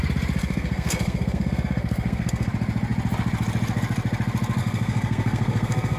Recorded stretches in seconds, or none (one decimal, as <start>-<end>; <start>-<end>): 0.0-0.4; 2.5-4.6